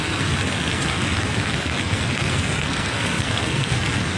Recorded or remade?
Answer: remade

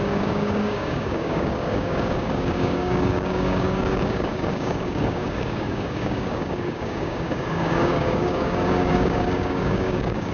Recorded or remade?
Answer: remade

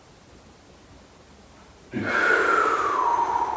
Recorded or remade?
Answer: recorded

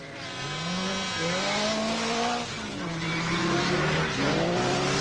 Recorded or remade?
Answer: recorded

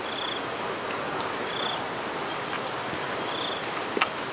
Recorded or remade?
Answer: recorded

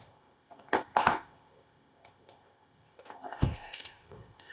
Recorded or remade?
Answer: remade